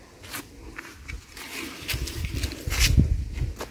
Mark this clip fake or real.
real